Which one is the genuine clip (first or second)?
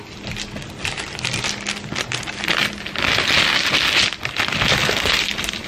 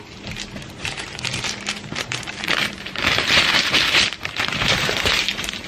first